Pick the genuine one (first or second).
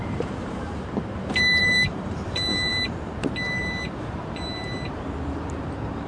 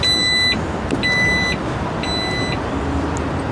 second